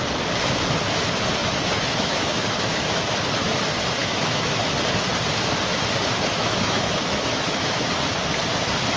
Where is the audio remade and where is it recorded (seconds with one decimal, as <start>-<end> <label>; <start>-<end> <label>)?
0.0-1.4 recorded; 1.4-3.0 remade; 3.0-4.0 recorded; 4.0-4.6 remade; 4.6-6.3 recorded; 6.3-7.9 remade; 7.9-9.0 recorded

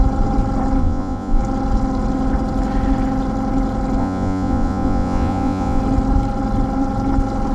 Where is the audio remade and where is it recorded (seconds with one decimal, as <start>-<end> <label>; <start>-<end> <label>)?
0.0-0.8 recorded; 0.8-1.4 remade; 1.4-4.0 recorded; 4.0-5.8 remade; 5.8-7.5 recorded

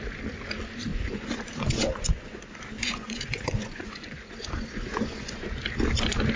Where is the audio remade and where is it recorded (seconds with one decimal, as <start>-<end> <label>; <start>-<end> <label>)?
0.0-0.9 recorded; 0.9-2.4 remade; 2.4-2.8 recorded; 2.8-5.6 remade; 5.6-6.4 recorded

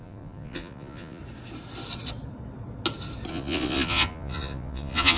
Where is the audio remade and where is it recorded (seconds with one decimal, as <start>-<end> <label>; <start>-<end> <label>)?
0.0-1.2 remade; 1.2-3.3 recorded; 3.3-5.2 remade

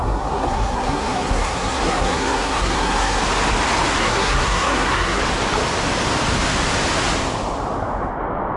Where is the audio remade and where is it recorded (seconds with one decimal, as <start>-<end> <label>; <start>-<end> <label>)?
0.0-3.2 remade; 3.2-4.0 recorded; 4.0-5.2 remade; 5.2-8.6 recorded